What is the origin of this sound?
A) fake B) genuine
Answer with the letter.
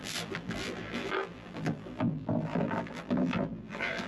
A